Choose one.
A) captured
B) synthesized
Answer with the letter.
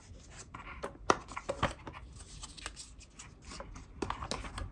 A